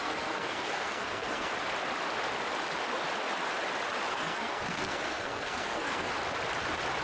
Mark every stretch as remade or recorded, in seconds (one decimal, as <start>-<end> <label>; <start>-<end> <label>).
0.0-1.5 remade; 1.5-4.1 recorded; 4.1-6.1 remade; 6.1-7.0 recorded